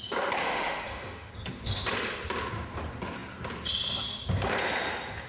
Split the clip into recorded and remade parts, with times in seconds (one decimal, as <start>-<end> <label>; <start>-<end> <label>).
0.0-0.4 recorded; 0.4-1.3 remade; 1.3-5.3 recorded